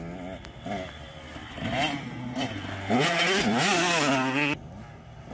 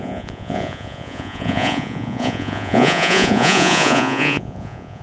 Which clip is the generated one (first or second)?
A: second